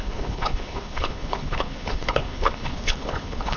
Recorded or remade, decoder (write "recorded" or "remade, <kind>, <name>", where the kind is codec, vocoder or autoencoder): remade, codec, HILCodec